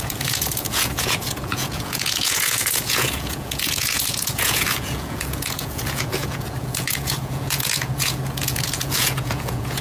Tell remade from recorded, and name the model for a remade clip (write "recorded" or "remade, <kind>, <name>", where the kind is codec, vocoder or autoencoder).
remade, vocoder, Vocos